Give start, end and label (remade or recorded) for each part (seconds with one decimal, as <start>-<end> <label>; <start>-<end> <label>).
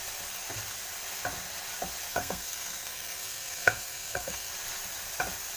0.0-2.1 recorded; 2.1-4.5 remade; 4.5-5.6 recorded